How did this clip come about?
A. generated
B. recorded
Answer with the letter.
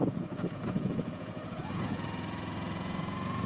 A